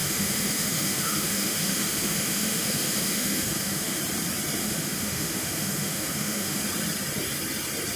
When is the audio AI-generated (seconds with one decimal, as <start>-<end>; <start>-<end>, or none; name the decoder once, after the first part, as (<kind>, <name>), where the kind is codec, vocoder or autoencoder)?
0.0-4.0 (autoencoder, DAC-VAE); 4.6-6.6